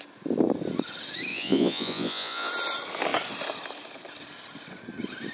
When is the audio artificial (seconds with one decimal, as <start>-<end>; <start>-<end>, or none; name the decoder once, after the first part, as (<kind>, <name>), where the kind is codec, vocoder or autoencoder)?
1.3-2.5 (vocoder, Vocos)